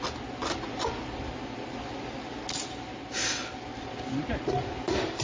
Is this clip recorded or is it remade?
recorded